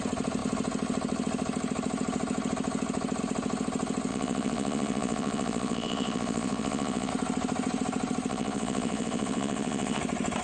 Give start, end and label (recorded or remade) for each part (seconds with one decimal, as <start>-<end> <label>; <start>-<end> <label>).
0.0-4.1 recorded; 4.1-7.1 remade; 7.1-8.3 recorded; 8.3-10.0 remade; 10.0-10.4 recorded

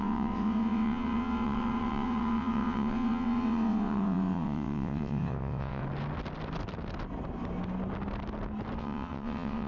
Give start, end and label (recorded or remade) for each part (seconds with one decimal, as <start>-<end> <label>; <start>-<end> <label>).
0.0-5.8 remade; 5.8-8.8 recorded; 8.8-9.7 remade